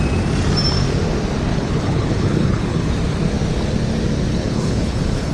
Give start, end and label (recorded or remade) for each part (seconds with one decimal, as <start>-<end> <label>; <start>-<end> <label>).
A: 0.0-1.5 recorded; 1.5-2.9 remade; 2.9-4.3 recorded; 4.3-5.3 remade